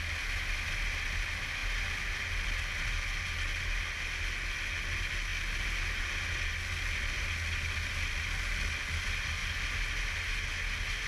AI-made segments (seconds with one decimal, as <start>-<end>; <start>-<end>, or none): none